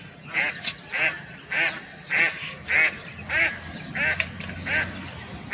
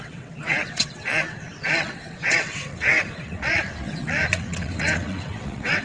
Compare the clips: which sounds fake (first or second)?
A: second